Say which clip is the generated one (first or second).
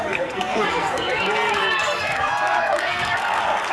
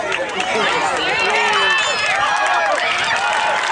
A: first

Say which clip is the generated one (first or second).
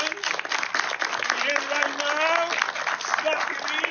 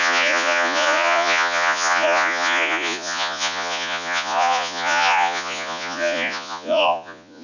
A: second